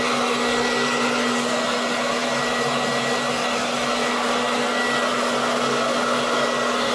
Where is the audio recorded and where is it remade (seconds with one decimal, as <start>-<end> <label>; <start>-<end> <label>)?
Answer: 0.0-6.9 recorded

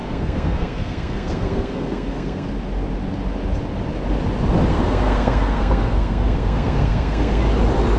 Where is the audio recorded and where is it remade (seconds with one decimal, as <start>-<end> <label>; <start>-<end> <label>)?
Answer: 0.0-2.5 remade; 2.5-4.7 recorded; 4.7-7.4 remade; 7.4-8.0 recorded